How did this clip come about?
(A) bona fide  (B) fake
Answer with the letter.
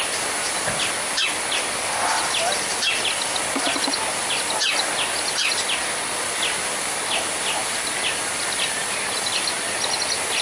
A